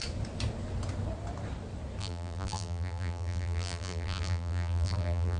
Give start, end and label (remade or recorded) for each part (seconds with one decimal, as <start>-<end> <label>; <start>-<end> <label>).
0.0-2.0 recorded; 2.0-5.4 remade